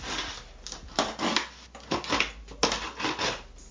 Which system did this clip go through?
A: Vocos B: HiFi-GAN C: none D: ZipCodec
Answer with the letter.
C